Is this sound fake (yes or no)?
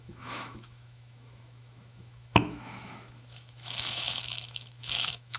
yes